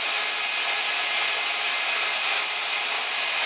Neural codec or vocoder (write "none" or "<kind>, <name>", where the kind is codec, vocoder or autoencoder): none